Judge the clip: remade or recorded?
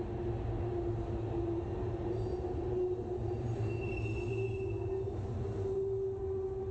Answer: recorded